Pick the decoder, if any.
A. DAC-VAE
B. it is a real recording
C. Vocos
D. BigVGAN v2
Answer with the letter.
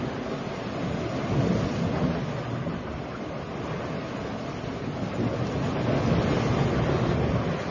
B